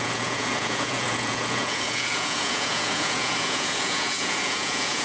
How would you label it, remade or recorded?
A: remade